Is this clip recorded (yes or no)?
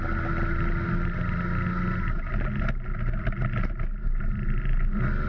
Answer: yes